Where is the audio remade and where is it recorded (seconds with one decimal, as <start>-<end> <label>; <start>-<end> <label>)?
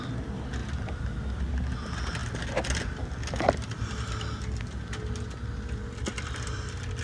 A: 0.0-0.6 recorded; 0.6-1.4 remade; 1.4-7.0 recorded